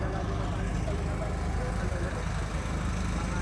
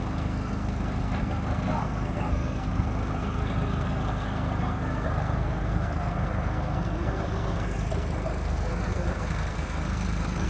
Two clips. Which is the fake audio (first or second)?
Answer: second